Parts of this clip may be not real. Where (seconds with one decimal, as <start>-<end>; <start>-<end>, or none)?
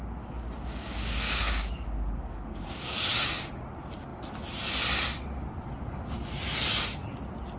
0.7-3.5